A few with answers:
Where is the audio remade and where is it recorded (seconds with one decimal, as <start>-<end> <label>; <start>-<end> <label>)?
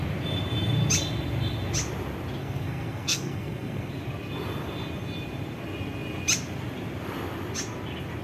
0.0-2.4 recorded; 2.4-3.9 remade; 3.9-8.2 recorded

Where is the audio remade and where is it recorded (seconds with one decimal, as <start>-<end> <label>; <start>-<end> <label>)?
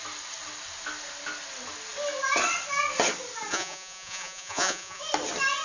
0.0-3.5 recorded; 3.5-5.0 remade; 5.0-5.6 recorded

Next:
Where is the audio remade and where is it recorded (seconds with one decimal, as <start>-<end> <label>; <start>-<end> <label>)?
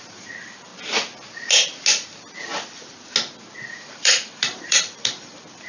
0.0-0.7 remade; 0.7-3.7 recorded; 3.7-5.7 remade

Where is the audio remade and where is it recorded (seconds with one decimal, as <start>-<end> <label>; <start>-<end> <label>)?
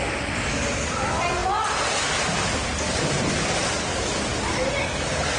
0.0-5.4 recorded